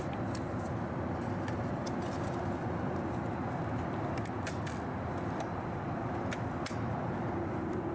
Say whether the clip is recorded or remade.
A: recorded